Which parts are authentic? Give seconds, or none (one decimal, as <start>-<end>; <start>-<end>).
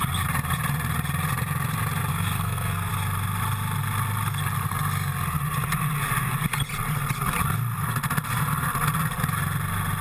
0.0-2.1; 2.9-10.0